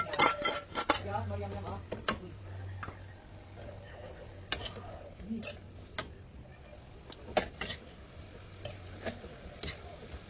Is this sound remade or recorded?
recorded